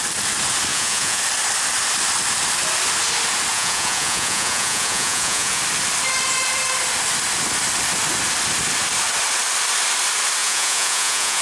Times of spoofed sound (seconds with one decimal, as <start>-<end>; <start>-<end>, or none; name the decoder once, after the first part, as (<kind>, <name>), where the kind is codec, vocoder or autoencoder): 0.7-1.2 (vocoder, Vocos); 3.5-5.6; 10.4-11.4